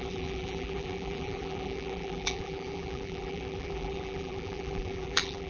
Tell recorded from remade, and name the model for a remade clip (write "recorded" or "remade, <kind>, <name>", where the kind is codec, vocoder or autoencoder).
remade, vocoder, BigVGAN v2